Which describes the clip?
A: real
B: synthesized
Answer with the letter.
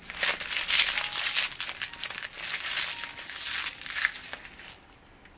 A